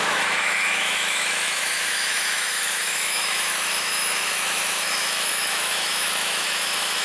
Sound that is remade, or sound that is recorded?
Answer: remade